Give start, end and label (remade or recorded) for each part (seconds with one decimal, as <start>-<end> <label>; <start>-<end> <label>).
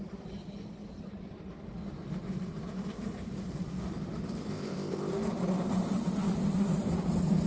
0.0-4.5 recorded; 4.5-5.1 remade; 5.1-7.5 recorded